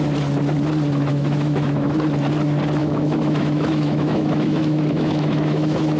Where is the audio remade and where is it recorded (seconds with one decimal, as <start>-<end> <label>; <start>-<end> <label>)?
0.0-1.1 recorded; 1.1-1.9 remade; 1.9-2.8 recorded; 2.8-6.0 remade